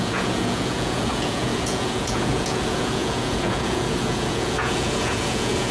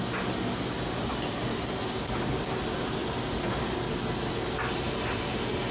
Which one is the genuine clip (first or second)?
second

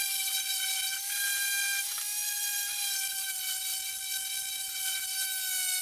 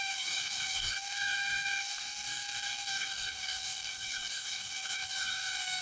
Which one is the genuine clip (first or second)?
first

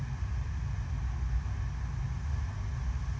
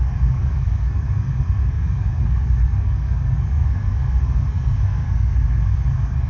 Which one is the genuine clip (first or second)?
first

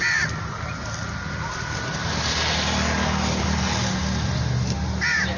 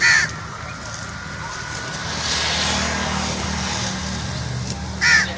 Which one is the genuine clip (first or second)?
second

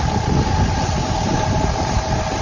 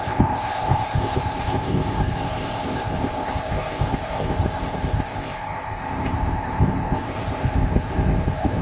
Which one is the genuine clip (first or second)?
first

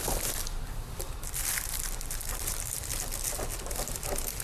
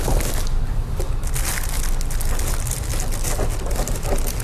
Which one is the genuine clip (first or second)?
second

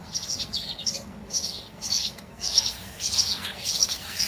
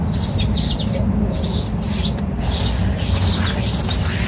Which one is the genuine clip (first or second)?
second